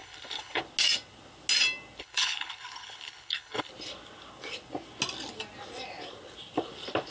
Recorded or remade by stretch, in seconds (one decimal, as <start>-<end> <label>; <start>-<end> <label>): 0.0-0.6 remade; 0.6-2.0 recorded; 2.0-3.7 remade; 3.7-7.1 recorded